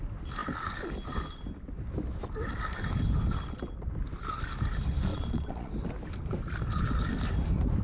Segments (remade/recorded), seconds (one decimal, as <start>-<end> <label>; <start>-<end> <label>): 0.0-5.1 recorded; 5.1-5.7 remade; 5.7-7.8 recorded